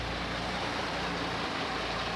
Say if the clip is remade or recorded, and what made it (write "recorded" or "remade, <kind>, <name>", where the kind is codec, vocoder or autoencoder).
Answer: recorded